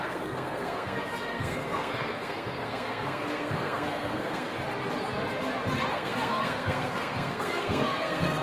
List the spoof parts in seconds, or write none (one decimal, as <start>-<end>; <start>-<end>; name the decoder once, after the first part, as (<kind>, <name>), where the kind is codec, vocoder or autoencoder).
0.0-4.5 (codec, SNAC); 5.9-8.4